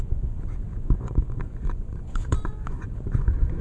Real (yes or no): no